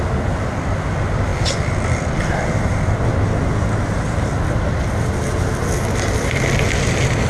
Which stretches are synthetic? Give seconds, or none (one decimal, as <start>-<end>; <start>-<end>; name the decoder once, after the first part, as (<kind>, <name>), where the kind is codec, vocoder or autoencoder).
none